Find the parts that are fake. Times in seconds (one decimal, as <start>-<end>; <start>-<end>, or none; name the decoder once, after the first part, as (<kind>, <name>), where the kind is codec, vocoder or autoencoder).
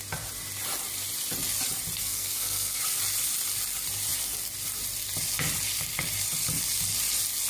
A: 2.0-2.8 (codec, SNAC)